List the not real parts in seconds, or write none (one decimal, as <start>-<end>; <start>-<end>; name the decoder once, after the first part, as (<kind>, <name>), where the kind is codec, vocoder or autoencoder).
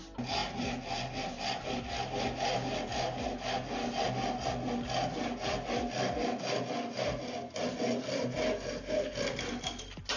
none